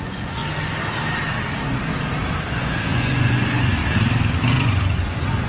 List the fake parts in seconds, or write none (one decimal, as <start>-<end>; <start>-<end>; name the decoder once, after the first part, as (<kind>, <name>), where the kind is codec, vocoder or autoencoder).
0.0-0.4 (vocoder, Vocos); 2.5-3.8; 4.5-5.5